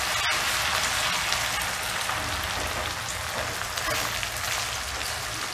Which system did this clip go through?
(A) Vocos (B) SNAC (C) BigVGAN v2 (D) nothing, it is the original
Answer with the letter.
D